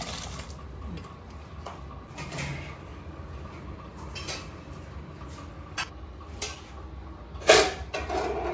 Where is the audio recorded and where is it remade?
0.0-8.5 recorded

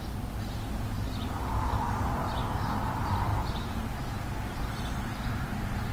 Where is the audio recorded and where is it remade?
0.0-1.4 recorded; 1.4-2.0 remade; 2.0-2.4 recorded; 2.4-2.9 remade; 2.9-5.9 recorded

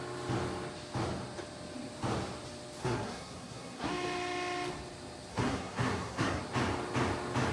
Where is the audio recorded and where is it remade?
0.0-2.8 recorded; 2.8-3.9 remade; 3.9-5.3 recorded; 5.3-6.4 remade; 6.4-7.5 recorded

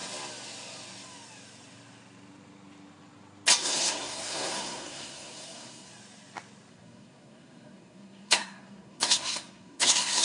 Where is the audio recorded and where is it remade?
0.0-3.6 recorded; 3.6-5.9 remade; 5.9-6.7 recorded; 6.7-10.2 remade

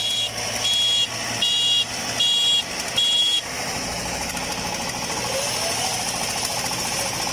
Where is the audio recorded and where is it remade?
0.0-3.2 recorded; 3.2-4.3 remade; 4.3-7.3 recorded

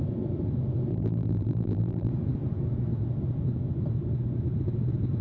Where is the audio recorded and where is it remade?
0.0-0.9 recorded; 0.9-2.1 remade; 2.1-5.2 recorded

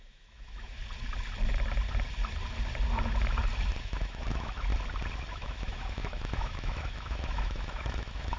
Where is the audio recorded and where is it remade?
0.0-0.8 remade; 0.8-3.7 recorded; 3.7-4.7 remade; 4.7-5.3 recorded; 5.3-8.4 remade